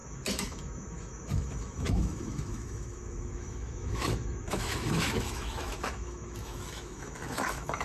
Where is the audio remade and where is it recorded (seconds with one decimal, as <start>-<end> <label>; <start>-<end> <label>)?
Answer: 0.0-7.8 remade